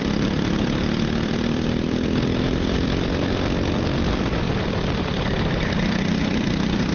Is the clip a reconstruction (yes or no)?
yes